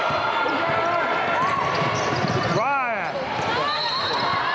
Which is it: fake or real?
real